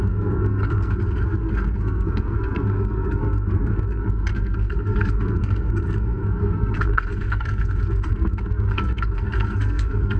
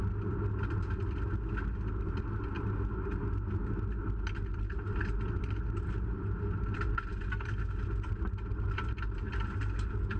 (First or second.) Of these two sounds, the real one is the second